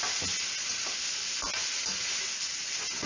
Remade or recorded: recorded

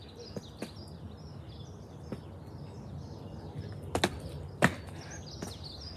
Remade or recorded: recorded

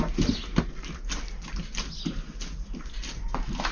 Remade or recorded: recorded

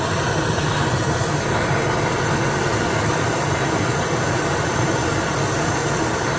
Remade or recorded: recorded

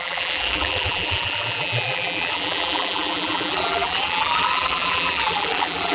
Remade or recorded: remade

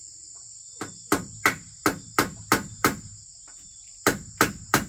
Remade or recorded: remade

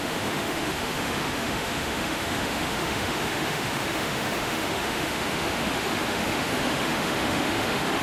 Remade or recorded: remade